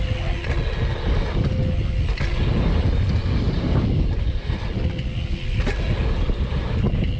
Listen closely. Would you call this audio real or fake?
real